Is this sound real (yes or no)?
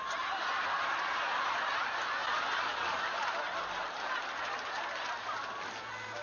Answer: yes